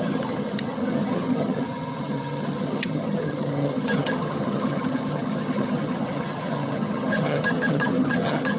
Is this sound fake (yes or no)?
yes